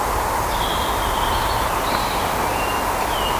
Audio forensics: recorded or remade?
recorded